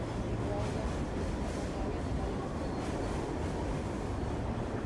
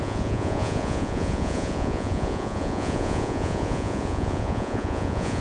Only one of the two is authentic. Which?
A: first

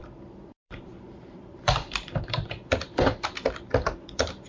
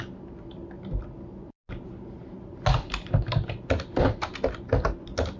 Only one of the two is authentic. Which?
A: second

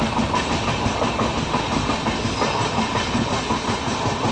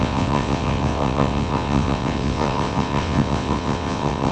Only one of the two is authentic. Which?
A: first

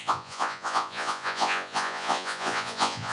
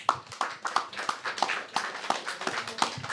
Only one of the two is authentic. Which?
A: second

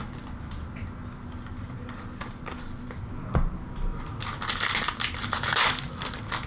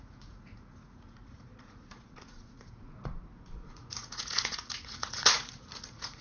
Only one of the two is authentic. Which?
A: first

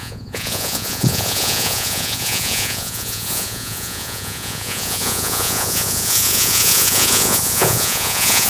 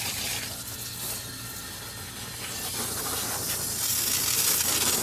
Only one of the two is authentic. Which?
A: second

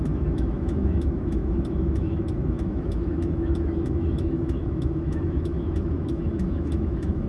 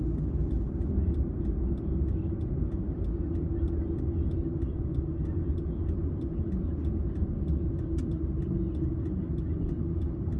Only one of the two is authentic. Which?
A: second